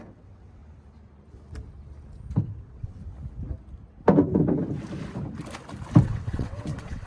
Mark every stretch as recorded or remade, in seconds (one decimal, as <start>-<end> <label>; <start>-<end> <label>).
0.0-0.6 remade; 0.6-2.6 recorded; 2.6-3.0 remade; 3.0-6.0 recorded; 6.0-7.1 remade